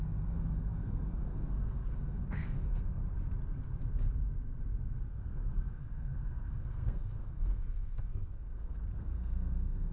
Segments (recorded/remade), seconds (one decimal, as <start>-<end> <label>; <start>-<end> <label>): 0.0-3.0 remade; 3.0-5.1 recorded; 5.1-9.9 remade